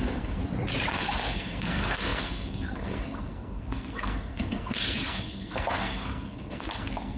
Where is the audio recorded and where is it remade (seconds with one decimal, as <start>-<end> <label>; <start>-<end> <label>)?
0.0-0.4 remade; 0.4-0.9 recorded; 0.9-7.2 remade